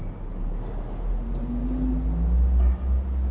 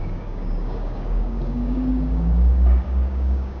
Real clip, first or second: first